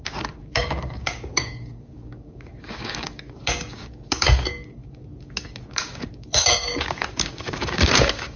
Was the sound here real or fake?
fake